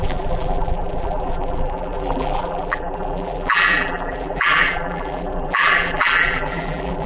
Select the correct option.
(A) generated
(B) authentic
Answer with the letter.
A